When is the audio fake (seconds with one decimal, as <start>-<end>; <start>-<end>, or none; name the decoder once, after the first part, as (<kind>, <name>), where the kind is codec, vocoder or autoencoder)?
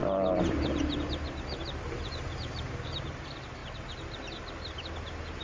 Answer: 0.0-3.2 (vocoder, BigVGAN v2)